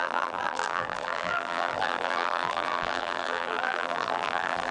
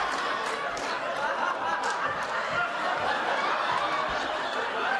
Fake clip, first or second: first